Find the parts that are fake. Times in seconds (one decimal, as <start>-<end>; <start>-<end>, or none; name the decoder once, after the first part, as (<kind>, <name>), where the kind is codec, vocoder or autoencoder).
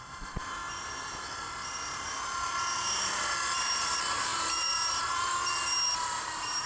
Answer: 0.0-0.6 (vocoder, BigVGAN v2); 3.6-6.7